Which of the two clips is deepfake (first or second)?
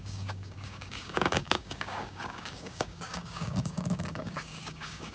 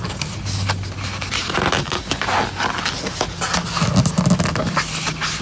first